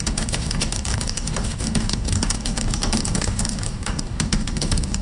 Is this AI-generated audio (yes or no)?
yes